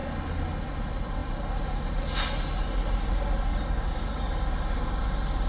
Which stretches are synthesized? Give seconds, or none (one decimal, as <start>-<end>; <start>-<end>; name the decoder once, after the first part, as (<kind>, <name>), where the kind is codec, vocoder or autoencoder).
3.5-5.0 (codec, DAC)